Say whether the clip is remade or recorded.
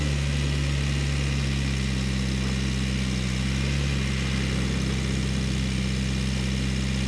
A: recorded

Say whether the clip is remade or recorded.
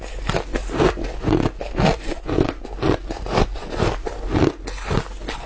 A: recorded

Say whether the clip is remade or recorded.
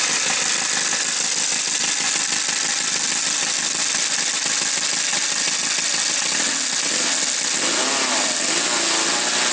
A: recorded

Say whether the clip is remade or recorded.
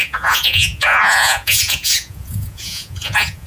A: remade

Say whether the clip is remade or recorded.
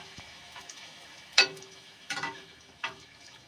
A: remade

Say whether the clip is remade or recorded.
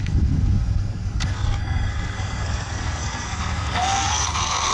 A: remade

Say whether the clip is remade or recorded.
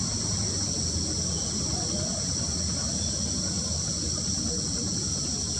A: recorded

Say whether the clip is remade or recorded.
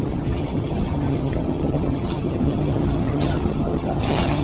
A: remade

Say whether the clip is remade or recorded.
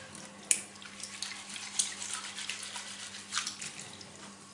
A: recorded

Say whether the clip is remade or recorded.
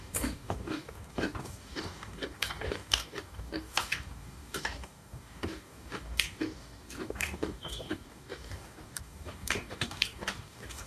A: remade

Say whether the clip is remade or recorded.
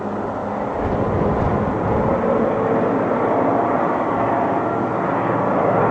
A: recorded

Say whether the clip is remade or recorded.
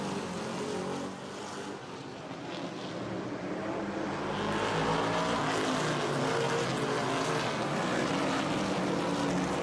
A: recorded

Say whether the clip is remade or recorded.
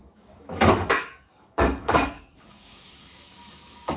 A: remade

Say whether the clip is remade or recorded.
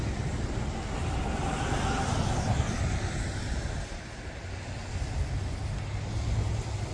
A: recorded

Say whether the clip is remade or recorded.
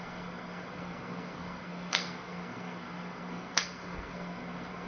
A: remade